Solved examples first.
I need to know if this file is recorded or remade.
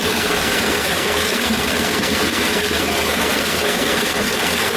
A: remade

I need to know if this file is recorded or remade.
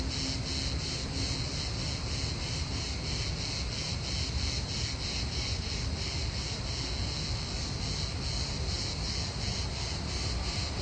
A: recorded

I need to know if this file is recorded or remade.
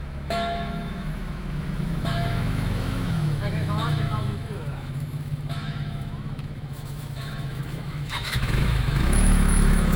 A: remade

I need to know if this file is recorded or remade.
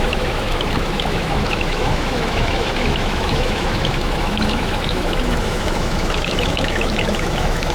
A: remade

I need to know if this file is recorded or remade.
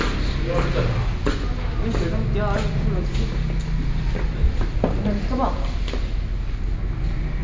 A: recorded